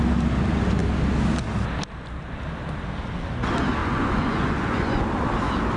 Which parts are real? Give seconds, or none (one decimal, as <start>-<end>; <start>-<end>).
0.0-3.8; 5.0-5.8